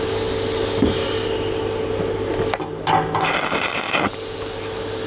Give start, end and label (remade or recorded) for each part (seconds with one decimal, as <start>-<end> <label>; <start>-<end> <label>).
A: 0.0-5.1 recorded